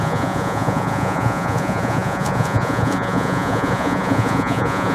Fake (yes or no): yes